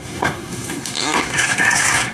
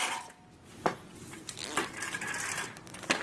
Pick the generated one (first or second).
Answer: first